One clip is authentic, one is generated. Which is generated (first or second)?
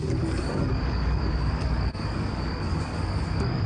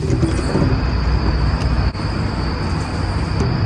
first